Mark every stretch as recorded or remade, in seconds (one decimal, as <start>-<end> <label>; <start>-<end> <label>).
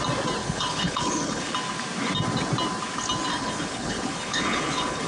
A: 0.0-0.4 recorded; 0.4-1.5 remade; 1.5-3.3 recorded; 3.3-5.1 remade